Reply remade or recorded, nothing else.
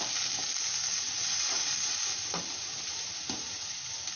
recorded